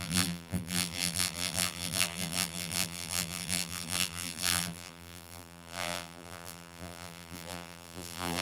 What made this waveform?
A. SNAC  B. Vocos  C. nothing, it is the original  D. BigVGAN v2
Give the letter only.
D